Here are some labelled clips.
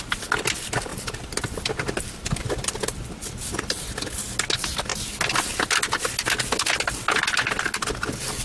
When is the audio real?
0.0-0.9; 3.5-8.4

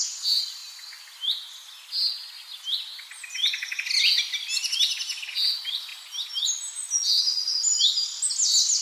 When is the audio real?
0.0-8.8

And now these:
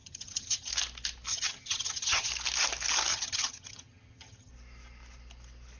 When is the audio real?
0.7-1.3; 2.3-3.1; 4.5-5.8